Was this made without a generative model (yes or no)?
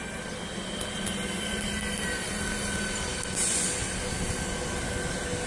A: yes